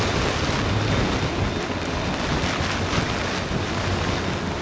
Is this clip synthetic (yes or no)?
no